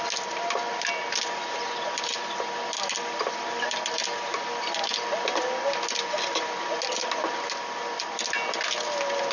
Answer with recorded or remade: recorded